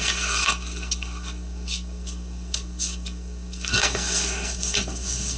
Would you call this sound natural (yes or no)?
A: no